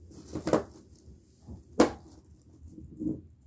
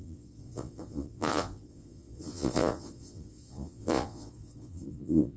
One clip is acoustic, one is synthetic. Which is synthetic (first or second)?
second